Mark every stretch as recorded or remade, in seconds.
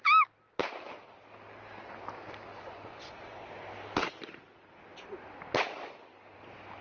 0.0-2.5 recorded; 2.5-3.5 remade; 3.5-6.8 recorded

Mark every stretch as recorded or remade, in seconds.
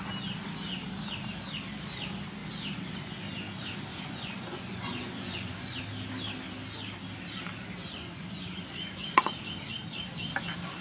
0.0-3.9 recorded; 3.9-5.8 remade; 5.8-7.8 recorded; 7.8-9.4 remade; 9.4-10.8 recorded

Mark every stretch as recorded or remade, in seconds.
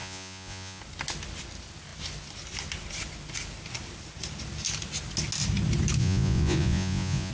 0.0-0.8 remade; 0.8-6.0 recorded; 6.0-7.3 remade